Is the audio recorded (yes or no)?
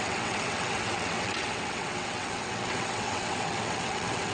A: no